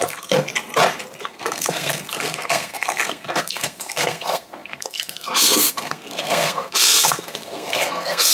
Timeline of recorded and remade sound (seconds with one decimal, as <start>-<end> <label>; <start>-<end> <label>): 0.0-0.5 remade; 0.5-1.2 recorded; 1.2-8.3 remade